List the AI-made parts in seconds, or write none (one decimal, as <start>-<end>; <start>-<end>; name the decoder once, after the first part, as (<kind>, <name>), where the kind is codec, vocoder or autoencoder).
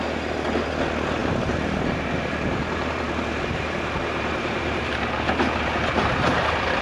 1.2-5.3 (vocoder, BigVGAN v2)